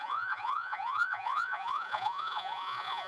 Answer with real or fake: fake